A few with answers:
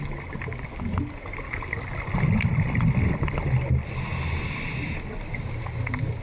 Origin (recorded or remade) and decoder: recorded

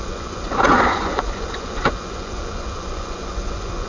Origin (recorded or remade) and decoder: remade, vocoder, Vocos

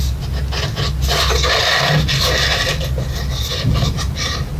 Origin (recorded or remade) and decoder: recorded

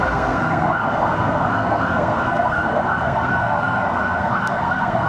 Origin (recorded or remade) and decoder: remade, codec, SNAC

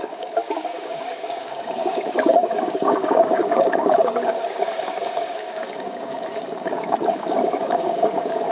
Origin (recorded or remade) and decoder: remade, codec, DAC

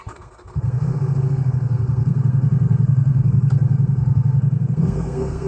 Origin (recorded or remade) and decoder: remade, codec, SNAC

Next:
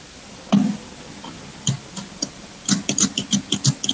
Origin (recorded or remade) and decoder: recorded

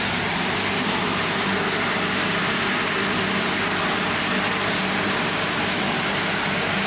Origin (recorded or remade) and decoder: recorded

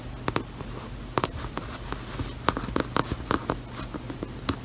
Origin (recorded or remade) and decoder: recorded